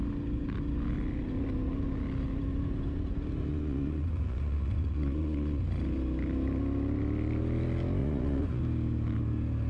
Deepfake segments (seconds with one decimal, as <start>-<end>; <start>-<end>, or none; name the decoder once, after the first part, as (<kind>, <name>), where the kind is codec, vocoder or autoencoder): 3.5-5.6 (vocoder, Vocos); 8.0-8.6